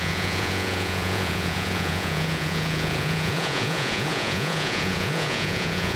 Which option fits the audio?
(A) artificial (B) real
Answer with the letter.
A